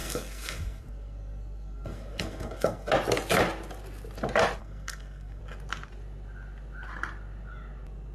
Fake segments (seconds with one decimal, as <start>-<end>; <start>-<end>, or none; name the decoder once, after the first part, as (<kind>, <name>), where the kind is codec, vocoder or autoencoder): 0.0-2.9 (codec, SNAC); 4.6-5.4